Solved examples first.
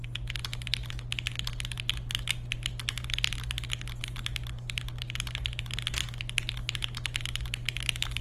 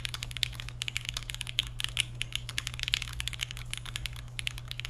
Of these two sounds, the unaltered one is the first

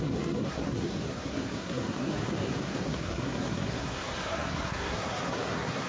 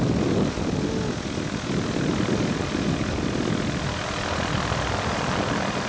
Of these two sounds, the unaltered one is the second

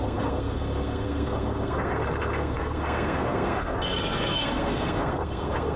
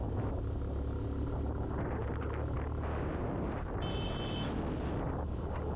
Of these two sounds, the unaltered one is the second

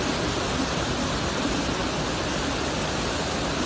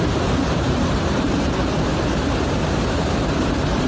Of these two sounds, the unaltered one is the first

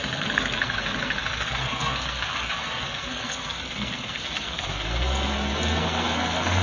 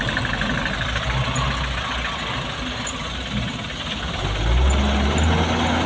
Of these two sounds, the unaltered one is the second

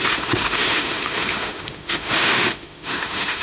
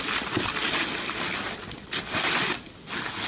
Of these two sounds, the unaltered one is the second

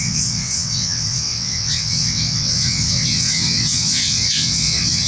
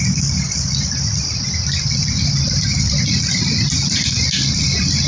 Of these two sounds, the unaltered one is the second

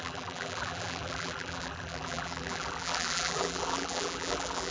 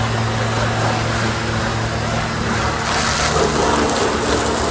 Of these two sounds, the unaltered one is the second